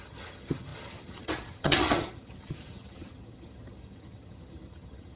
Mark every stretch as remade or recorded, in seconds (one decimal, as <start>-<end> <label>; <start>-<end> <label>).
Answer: 0.0-5.2 remade